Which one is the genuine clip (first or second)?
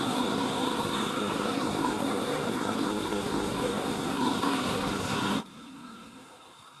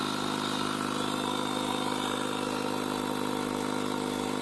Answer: second